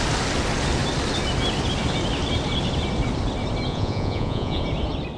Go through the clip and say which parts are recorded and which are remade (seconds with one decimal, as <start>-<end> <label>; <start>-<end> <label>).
0.0-3.7 recorded; 3.7-4.6 remade; 4.6-5.2 recorded